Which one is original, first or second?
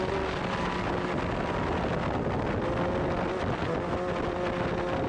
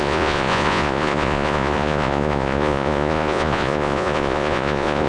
first